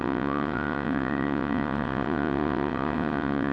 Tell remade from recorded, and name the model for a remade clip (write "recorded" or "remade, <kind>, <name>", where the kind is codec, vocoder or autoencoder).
remade, vocoder, WaveNeXt